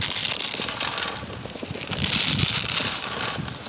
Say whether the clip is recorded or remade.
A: recorded